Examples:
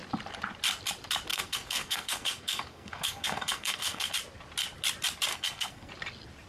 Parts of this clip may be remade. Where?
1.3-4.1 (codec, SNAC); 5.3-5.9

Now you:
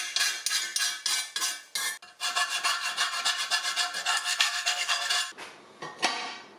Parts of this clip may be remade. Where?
4.0-5.1 (codec, SNAC)